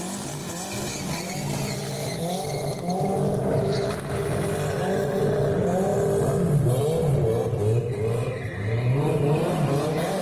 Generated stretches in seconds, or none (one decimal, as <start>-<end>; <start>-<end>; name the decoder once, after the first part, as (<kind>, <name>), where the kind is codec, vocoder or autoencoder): none